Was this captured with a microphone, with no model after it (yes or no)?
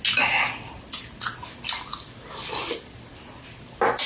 yes